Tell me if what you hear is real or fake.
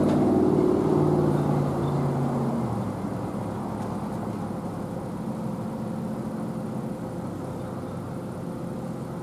real